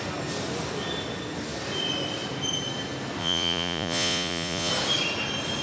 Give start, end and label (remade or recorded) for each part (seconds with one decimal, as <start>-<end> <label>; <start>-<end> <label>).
0.0-3.2 recorded; 3.2-4.7 remade; 4.7-5.6 recorded